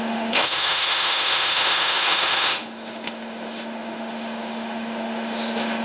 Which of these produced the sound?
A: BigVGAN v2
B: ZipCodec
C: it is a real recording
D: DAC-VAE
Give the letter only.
D